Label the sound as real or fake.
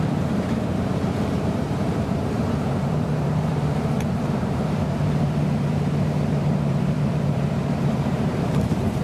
fake